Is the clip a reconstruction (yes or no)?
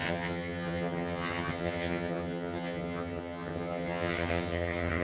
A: yes